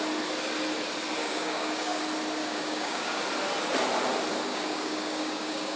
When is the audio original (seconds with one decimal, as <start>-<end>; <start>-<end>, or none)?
0.0-1.2; 2.0-2.4; 3.2-4.5